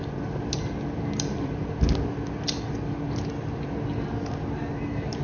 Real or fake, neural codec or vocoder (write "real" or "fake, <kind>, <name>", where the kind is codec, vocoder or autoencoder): real